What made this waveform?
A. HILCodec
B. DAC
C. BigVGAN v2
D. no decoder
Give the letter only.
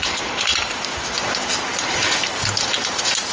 D